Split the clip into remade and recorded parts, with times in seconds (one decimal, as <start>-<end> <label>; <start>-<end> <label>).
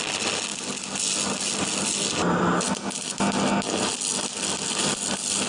0.0-5.5 recorded